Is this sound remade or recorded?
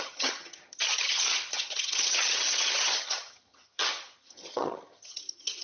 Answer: remade